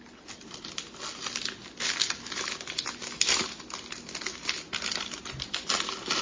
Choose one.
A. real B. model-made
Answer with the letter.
A